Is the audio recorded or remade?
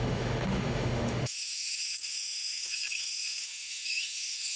remade